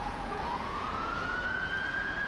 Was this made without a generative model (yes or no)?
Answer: no